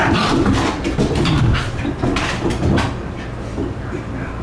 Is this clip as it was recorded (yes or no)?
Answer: yes